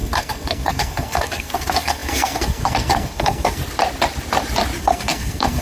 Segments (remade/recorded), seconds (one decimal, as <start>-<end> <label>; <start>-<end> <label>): 0.0-3.6 remade; 3.6-4.8 recorded; 4.8-5.6 remade